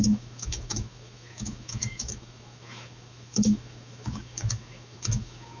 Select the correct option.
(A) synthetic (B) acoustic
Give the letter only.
A